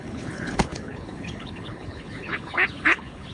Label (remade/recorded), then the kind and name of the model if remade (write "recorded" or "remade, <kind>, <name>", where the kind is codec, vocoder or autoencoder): remade, codec, HILCodec